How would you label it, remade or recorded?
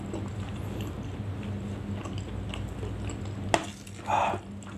recorded